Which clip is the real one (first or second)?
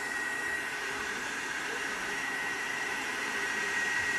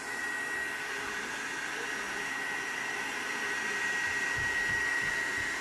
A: second